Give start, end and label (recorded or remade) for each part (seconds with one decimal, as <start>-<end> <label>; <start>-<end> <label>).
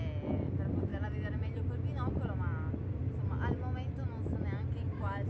0.0-5.3 recorded